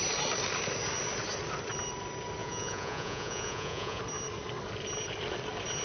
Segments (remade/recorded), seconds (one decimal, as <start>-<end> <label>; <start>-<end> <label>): 0.0-2.4 recorded; 2.4-4.0 remade; 4.0-5.8 recorded